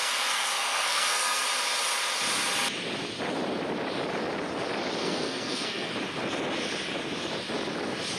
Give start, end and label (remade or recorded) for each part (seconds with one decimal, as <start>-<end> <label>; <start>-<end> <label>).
0.0-1.4 remade; 1.4-5.0 recorded; 5.0-5.9 remade; 5.9-8.2 recorded